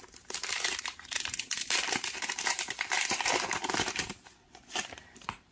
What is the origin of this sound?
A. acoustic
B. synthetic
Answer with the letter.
B